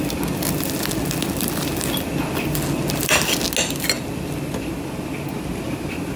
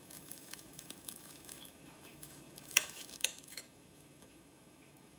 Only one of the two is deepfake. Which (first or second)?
second